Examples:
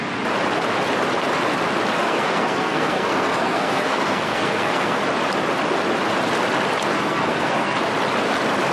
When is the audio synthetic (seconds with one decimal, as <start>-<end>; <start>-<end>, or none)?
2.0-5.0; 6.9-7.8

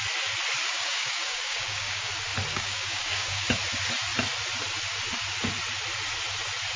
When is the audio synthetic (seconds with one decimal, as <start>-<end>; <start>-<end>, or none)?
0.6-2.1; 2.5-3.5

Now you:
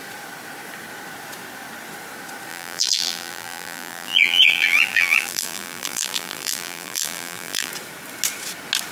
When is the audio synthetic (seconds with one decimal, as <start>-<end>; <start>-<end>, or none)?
2.5-7.7

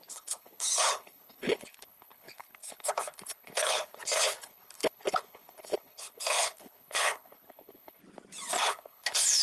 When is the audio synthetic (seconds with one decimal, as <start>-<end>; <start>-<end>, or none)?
0.0-8.0; 8.6-9.4

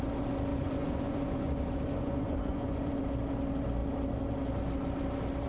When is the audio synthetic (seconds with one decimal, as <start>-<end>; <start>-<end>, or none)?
0.5-2.9